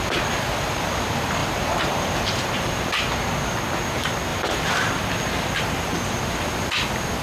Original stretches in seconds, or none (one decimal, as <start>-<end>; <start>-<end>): 0.0-1.4; 3.1-4.3; 4.9-7.2